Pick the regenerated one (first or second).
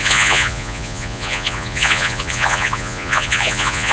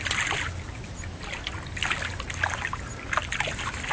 first